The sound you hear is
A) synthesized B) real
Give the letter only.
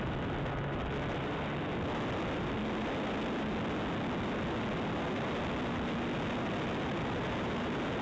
B